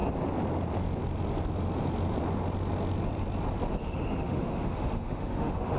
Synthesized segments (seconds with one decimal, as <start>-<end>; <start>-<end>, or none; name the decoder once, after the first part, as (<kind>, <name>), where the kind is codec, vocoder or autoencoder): 3.8-5.8 (autoencoder, DAC-VAE)